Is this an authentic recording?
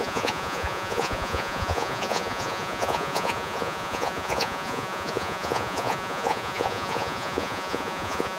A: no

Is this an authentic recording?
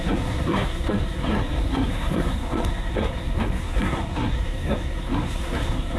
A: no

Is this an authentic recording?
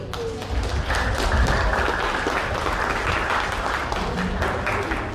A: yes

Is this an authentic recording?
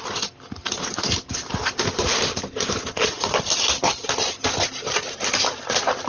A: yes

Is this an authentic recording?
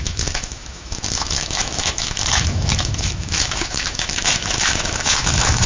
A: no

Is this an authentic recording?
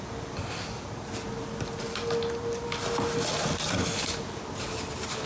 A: yes